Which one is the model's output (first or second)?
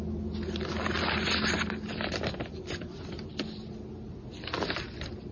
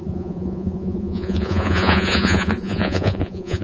second